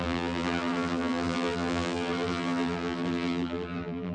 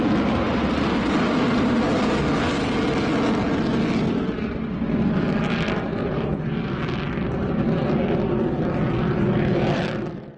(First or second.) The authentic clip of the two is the second